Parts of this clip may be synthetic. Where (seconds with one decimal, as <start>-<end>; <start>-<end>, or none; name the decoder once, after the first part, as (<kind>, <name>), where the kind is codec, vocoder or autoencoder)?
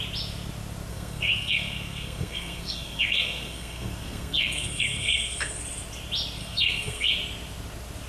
0.9-5.6 (codec, SNAC); 6.4-7.1